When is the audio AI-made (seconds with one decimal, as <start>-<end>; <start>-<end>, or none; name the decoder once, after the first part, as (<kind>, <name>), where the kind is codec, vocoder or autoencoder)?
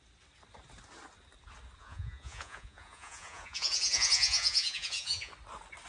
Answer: 1.8-5.3 (vocoder, Vocos)